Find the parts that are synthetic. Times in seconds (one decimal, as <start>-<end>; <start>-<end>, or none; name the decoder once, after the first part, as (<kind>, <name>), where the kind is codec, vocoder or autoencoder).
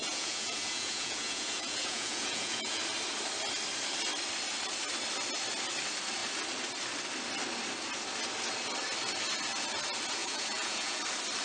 0.0-2.8 (vocoder, Vocos); 10.2-11.0